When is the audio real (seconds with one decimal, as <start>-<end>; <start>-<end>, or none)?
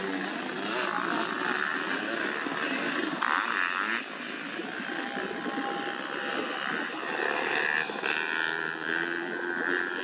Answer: 0.0-10.0